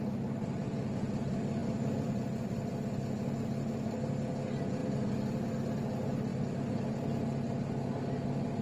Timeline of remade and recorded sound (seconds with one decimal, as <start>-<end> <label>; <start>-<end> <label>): 0.0-1.6 recorded; 1.6-2.7 remade; 2.7-6.3 recorded; 6.3-6.8 remade; 6.8-8.6 recorded